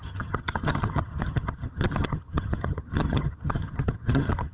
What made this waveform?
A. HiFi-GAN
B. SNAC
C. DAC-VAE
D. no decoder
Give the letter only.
A